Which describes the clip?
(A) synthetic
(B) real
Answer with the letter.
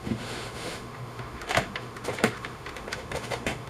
A